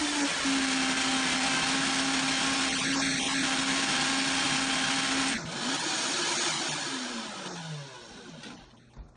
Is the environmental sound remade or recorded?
recorded